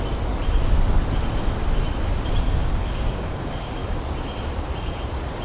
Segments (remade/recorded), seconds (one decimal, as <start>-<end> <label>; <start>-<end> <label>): 0.0-2.6 recorded; 2.6-3.7 remade; 3.7-5.4 recorded